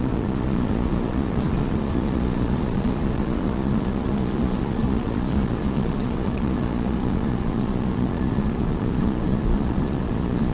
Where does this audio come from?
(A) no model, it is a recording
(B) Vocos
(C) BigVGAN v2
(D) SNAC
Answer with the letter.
B